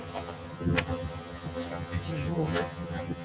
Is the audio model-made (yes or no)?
yes